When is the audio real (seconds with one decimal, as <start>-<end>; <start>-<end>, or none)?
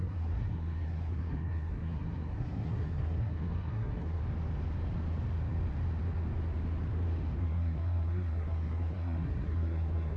4.2-7.4